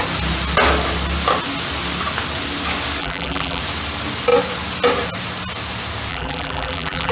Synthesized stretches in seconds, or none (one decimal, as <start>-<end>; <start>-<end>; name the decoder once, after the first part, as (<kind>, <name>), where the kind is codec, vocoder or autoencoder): 3.0-3.6 (vocoder, BigVGAN v2); 6.1-7.1